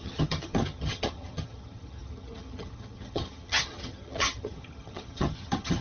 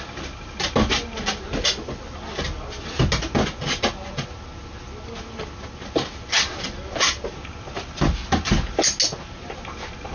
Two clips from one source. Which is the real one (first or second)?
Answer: second